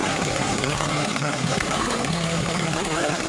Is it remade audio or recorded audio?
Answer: remade